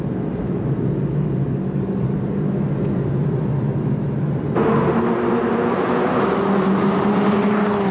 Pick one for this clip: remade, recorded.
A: recorded